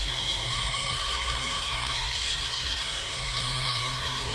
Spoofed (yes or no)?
yes